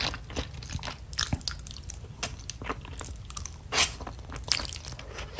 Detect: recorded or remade recorded